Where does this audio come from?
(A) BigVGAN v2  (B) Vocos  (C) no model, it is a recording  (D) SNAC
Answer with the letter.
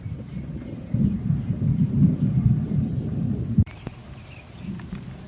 A